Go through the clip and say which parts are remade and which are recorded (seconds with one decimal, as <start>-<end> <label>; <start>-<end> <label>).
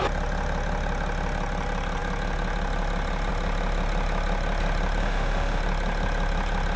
0.0-5.0 recorded; 5.0-5.6 remade; 5.6-6.8 recorded